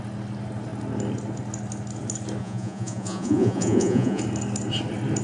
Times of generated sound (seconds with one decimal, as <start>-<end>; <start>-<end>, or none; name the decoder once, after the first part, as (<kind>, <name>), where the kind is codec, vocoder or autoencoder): 2.4-4.2 (vocoder, Vocos)